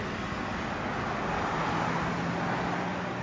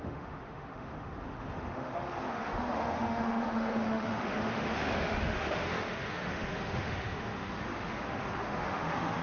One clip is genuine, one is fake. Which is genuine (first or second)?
first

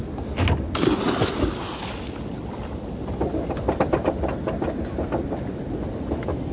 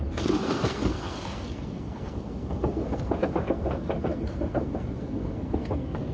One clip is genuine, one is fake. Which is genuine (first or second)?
first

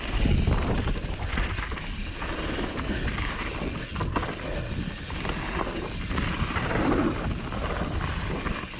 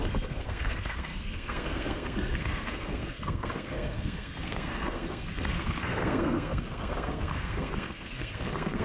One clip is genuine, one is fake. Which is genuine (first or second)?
first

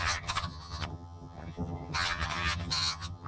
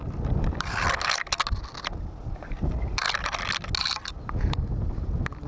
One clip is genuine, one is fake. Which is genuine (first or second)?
second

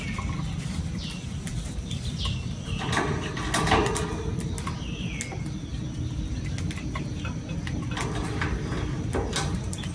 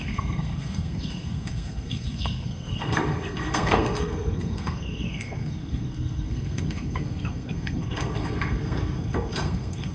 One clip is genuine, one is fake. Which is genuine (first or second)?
first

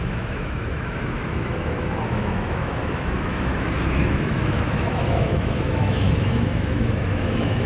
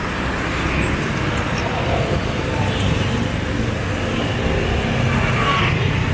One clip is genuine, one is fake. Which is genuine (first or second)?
second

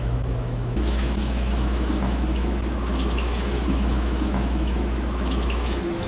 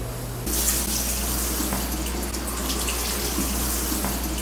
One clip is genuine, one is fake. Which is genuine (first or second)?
second